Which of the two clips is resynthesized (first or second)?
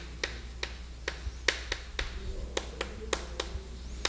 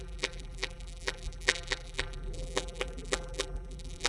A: second